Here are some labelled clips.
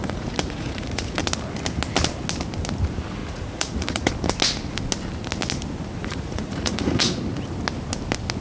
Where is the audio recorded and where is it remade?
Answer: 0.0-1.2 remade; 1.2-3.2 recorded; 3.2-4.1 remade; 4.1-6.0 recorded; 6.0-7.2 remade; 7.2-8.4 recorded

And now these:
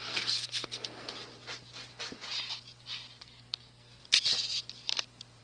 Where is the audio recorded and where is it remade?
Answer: 0.0-1.1 remade; 1.1-3.2 recorded; 3.2-4.0 remade; 4.0-5.4 recorded